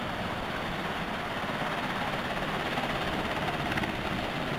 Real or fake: real